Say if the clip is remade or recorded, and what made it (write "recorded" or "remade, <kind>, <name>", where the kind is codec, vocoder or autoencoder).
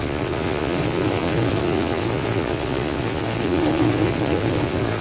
remade, vocoder, Vocos